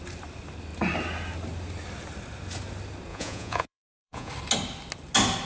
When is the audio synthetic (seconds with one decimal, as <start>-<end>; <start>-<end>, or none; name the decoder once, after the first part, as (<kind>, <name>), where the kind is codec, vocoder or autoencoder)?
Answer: 3.1-4.3 (vocoder, Vocos)